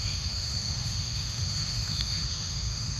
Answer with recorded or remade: remade